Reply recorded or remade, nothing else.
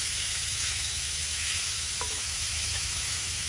remade